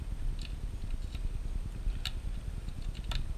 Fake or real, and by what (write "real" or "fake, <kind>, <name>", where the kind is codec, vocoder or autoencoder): real